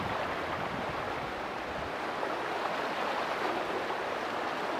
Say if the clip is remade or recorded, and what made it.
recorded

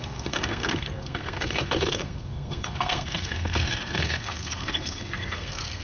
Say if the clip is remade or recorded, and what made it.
remade, codec, SNAC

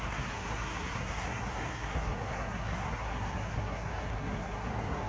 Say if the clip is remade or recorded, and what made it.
remade, codec, SNAC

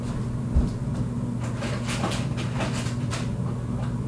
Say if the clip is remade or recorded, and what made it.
recorded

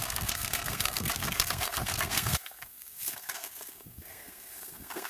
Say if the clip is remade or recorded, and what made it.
remade, codec, SNAC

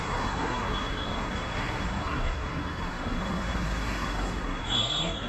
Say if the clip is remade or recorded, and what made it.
remade, codec, SNAC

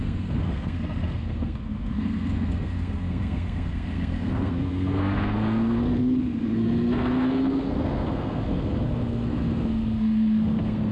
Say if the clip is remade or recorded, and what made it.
remade, codec, SNAC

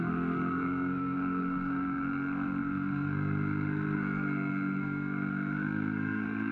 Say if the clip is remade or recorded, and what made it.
remade, codec, SNAC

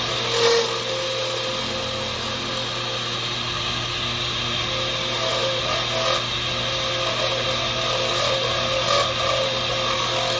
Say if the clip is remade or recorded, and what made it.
recorded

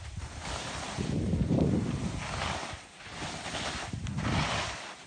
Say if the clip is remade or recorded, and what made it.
recorded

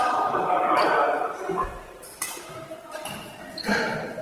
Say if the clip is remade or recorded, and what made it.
recorded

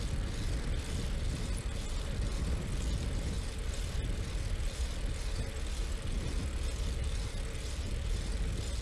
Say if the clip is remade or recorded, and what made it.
recorded